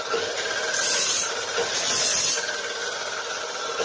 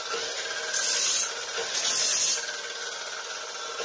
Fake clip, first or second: first